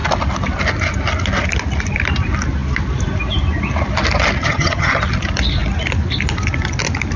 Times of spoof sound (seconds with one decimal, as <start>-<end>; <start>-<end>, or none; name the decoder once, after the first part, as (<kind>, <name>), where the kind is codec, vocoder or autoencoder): 4.4-5.0 (vocoder, HiFi-GAN)